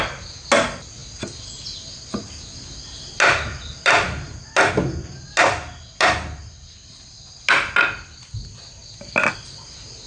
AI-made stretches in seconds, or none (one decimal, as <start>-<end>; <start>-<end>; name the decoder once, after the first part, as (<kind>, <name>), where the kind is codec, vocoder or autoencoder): none

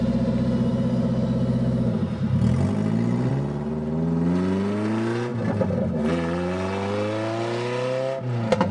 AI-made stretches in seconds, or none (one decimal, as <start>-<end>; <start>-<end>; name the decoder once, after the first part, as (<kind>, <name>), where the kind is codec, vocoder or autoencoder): none

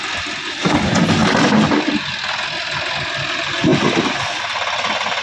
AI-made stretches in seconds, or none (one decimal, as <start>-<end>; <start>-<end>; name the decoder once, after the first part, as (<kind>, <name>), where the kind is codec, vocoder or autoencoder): none